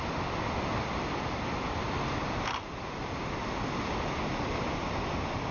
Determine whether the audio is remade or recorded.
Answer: recorded